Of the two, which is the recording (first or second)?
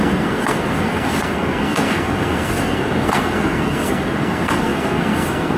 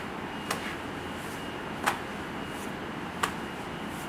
second